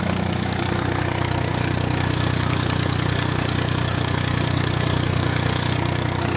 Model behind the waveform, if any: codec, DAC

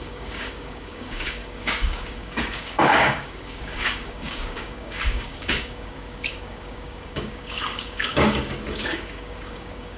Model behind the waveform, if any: codec, DAC